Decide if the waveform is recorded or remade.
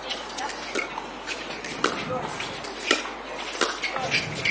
recorded